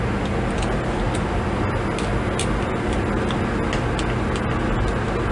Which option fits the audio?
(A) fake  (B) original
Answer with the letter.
B